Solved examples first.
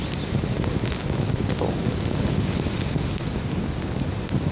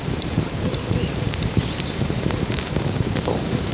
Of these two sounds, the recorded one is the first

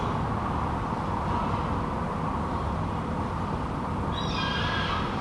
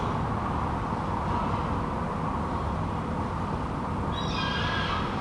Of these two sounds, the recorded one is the second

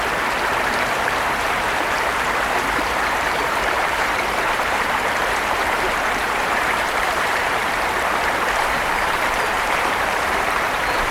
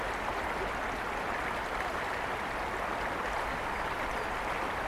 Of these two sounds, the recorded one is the second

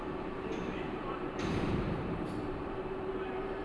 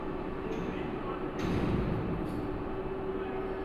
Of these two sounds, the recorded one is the second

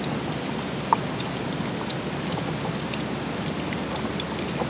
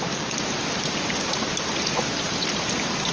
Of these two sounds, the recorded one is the first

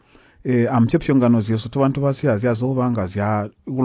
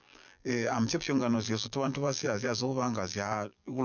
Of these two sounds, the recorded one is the first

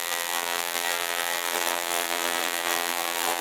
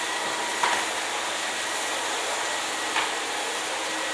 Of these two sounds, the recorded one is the second